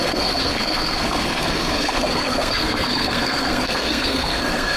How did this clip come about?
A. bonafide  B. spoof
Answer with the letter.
B